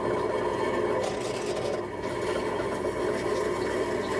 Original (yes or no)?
yes